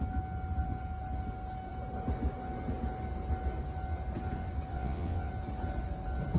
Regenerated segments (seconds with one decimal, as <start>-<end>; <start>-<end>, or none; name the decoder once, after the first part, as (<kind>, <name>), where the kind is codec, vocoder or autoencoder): 4.7-5.3 (vocoder, WaveNeXt)